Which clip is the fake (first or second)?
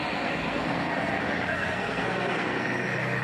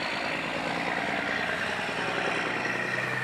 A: first